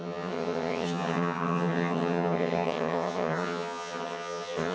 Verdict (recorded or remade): remade